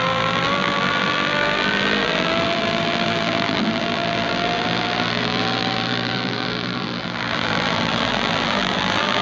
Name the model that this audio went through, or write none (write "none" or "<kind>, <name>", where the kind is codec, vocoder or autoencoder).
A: vocoder, BigVGAN v2